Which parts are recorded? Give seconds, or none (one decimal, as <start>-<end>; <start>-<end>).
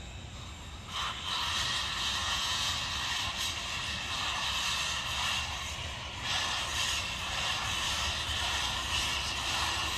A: 0.0-2.2; 2.7-10.0